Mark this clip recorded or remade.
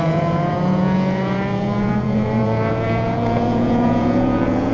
remade